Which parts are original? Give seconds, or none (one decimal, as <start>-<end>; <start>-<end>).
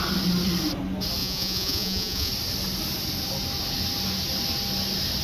0.0-1.2; 2.3-5.2